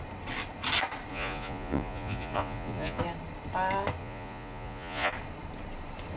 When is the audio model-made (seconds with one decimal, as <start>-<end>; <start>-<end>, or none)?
1.1-3.0; 4.0-5.1